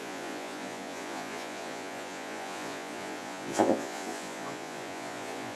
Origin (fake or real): fake